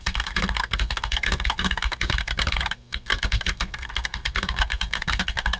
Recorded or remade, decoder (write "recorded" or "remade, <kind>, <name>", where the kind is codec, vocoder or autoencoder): remade, codec, SNAC